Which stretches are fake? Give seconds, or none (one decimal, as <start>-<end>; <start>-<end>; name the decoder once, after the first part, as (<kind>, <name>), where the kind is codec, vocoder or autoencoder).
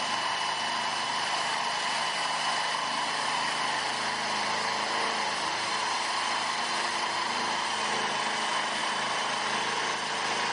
0.9-1.6 (vocoder, BigVGAN v2); 8.8-9.4